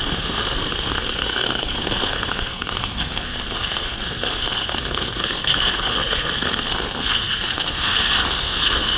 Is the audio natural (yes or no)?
no